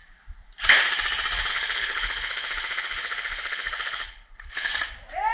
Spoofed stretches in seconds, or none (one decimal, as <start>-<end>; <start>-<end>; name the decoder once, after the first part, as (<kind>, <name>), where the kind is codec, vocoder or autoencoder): 1.5-4.7 (codec, HILCodec)